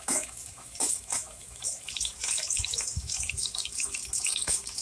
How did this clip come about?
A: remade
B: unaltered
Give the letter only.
A